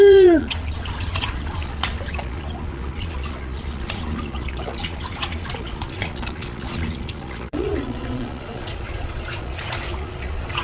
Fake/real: fake